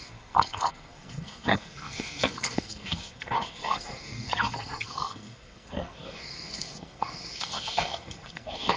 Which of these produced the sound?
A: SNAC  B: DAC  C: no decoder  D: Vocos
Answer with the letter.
A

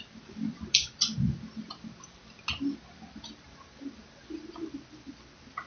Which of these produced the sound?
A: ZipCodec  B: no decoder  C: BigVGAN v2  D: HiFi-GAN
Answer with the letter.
B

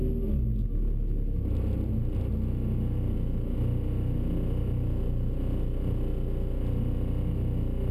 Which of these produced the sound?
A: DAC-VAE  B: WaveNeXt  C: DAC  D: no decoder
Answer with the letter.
D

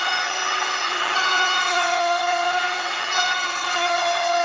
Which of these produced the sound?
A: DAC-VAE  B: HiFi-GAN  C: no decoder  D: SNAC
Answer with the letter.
B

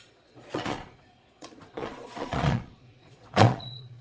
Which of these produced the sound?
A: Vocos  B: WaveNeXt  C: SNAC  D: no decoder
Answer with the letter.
A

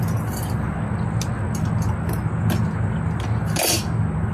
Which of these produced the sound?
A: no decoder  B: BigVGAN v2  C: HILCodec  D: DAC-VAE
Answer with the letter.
A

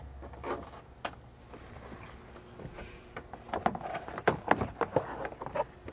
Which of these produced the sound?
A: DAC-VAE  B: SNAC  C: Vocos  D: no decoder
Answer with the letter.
D